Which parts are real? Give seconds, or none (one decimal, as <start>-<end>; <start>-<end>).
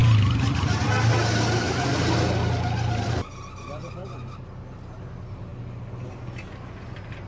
0.0-7.3